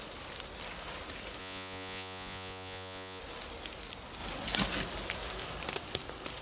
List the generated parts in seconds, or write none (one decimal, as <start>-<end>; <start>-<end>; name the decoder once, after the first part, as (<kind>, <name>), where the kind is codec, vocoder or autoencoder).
1.4-3.2 (vocoder, Vocos)